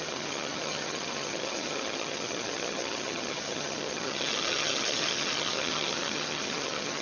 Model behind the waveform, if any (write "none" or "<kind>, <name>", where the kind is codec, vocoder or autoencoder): vocoder, HiFi-GAN